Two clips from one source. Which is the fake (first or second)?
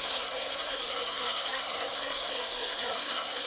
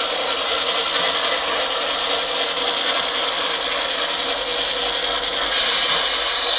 first